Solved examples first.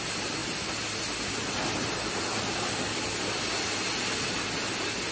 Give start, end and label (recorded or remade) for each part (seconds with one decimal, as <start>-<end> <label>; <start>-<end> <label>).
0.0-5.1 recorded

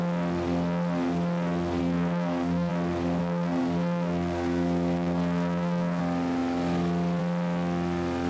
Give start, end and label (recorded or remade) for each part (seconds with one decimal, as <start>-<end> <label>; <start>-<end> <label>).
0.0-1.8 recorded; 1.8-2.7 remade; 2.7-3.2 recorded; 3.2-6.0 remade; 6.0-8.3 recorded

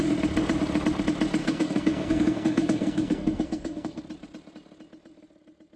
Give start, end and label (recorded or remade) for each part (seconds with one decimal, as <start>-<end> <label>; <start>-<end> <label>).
0.0-1.4 recorded; 1.4-4.0 remade; 4.0-5.8 recorded

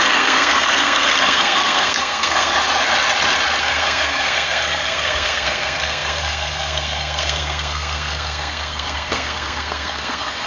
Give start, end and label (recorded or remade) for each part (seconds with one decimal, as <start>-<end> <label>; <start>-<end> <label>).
0.0-2.5 remade; 2.5-3.6 recorded; 3.6-10.5 remade